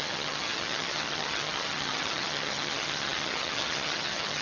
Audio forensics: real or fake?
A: fake